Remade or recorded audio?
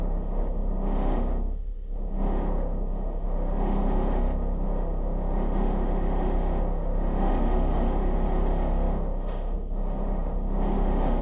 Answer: remade